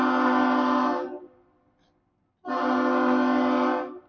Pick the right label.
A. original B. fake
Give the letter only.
A